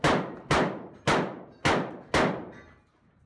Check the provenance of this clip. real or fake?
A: real